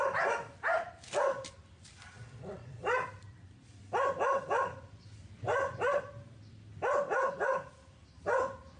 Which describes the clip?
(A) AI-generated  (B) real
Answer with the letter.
A